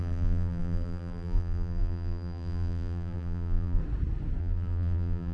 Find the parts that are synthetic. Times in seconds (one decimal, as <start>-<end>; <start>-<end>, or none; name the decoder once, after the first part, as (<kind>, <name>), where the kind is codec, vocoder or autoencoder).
0.0-3.8 (vocoder, BigVGAN v2); 4.4-5.3